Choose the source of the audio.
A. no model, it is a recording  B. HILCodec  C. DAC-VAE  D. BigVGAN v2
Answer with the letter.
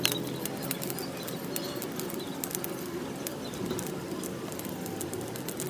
A